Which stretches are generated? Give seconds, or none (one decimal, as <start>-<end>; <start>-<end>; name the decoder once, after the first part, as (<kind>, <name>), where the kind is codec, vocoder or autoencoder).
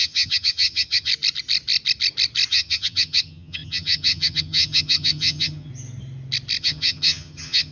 0.0-1.1 (vocoder, HiFi-GAN); 2.5-5.7; 6.6-7.7